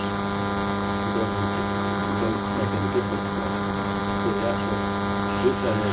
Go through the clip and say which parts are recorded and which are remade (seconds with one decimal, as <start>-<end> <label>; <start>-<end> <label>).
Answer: 0.0-2.0 recorded; 2.0-4.0 remade; 4.0-5.9 recorded

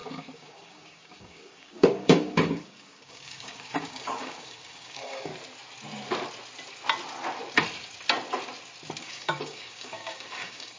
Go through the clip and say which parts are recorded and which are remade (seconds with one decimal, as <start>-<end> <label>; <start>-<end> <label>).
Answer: 0.0-5.3 remade; 5.3-9.0 recorded; 9.0-10.8 remade

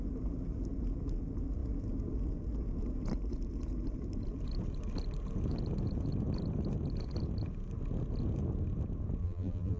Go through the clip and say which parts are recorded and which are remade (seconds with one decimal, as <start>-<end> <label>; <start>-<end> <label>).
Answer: 0.0-9.2 recorded; 9.2-9.8 remade

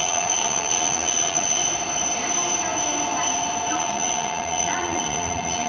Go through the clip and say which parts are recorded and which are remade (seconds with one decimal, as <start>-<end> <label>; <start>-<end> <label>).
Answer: 0.0-1.6 remade; 1.6-3.7 recorded; 3.7-5.7 remade

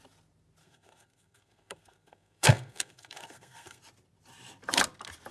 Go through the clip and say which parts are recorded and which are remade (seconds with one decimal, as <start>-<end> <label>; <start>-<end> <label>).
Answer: 0.0-0.6 recorded; 0.6-3.8 remade; 3.8-5.3 recorded

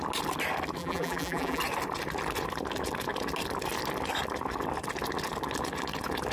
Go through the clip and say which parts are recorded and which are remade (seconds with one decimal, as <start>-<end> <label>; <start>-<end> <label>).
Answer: 0.0-0.8 recorded; 0.8-1.6 remade; 1.6-6.3 recorded